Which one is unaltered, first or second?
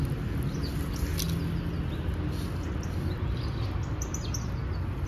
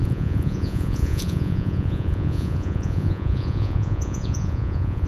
first